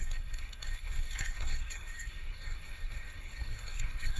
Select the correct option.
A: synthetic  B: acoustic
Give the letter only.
A